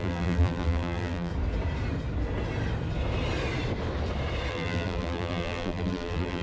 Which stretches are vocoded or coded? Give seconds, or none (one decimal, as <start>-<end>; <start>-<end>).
0.0-1.3; 4.5-6.4